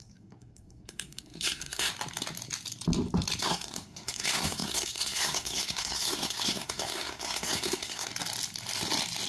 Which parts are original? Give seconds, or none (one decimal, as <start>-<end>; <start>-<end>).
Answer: 1.9-3.4; 8.1-9.3

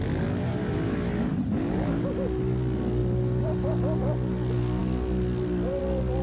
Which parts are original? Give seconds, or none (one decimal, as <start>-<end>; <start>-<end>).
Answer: 0.0-6.2

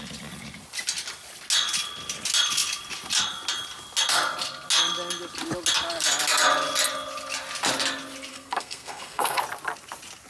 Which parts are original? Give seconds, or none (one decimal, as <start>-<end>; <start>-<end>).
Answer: 0.0-8.3; 9.4-10.3

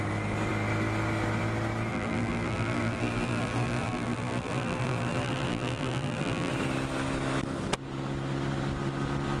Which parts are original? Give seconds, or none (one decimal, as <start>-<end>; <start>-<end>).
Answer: 0.0-1.9; 6.5-9.4

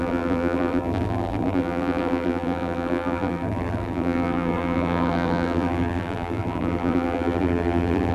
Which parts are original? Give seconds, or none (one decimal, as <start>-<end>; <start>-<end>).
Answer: none